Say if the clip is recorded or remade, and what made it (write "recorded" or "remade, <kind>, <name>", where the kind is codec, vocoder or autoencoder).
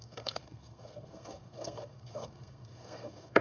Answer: remade, codec, SNAC